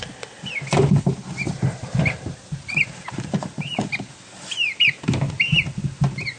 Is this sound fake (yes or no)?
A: no